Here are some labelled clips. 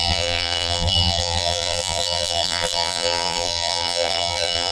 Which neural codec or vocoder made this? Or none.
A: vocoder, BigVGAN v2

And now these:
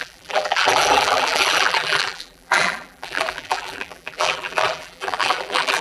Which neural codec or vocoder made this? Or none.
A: vocoder, BigVGAN v2